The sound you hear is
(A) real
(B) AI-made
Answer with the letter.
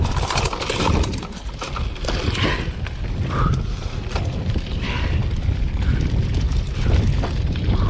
A